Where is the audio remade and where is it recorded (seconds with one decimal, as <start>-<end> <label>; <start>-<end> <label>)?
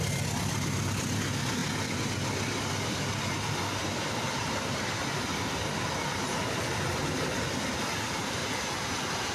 0.0-6.3 recorded; 6.3-7.0 remade; 7.0-9.3 recorded